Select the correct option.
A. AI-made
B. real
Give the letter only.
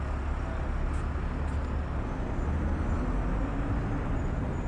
B